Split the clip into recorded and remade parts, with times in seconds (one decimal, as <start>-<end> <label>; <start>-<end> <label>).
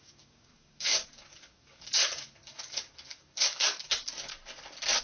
0.0-4.3 remade; 4.3-5.0 recorded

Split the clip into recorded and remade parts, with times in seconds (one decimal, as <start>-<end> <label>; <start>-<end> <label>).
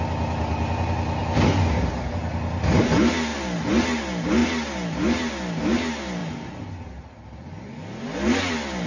0.0-8.9 recorded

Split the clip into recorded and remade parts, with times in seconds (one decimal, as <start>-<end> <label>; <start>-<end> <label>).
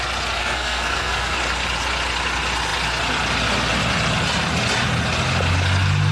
0.0-0.4 recorded; 0.4-1.4 remade; 1.4-6.1 recorded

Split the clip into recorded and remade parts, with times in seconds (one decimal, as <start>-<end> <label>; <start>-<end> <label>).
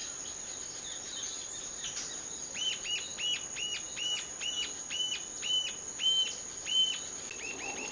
0.0-7.9 recorded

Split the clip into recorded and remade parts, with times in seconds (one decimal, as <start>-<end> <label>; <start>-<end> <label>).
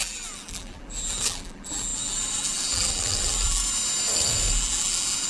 0.0-3.6 remade; 3.6-4.5 recorded; 4.5-5.3 remade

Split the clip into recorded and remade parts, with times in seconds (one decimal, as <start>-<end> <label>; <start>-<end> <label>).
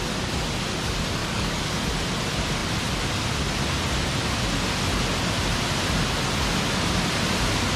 0.0-1.2 recorded; 1.2-1.8 remade; 1.8-7.8 recorded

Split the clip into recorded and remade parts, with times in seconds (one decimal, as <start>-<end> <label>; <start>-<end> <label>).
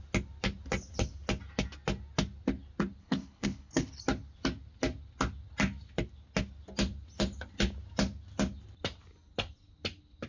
0.0-3.0 recorded; 3.0-4.0 remade; 4.0-10.3 recorded